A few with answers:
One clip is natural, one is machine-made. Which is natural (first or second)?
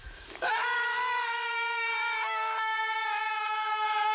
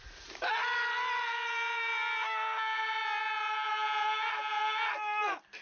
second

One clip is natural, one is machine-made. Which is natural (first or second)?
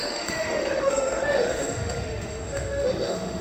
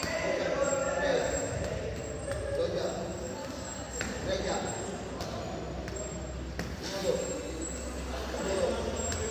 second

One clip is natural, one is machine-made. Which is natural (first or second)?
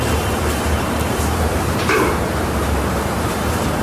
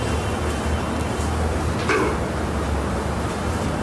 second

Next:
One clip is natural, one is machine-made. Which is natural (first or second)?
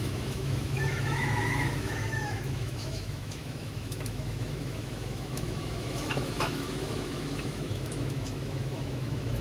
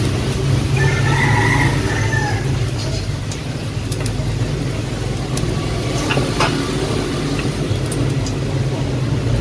second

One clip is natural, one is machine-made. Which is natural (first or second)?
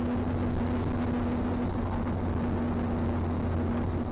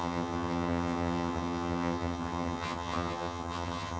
first